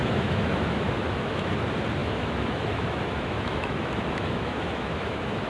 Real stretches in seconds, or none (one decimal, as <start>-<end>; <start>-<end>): 1.5-2.0